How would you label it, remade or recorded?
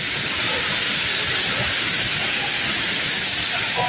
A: recorded